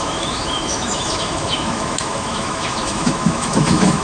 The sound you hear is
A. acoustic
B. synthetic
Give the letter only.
B